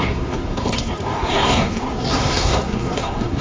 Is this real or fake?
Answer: fake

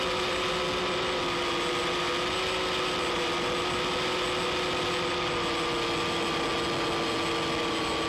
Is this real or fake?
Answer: real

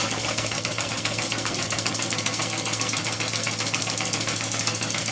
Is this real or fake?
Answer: fake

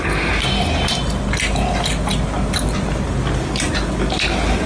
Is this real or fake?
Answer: real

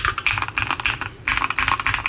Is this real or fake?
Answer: real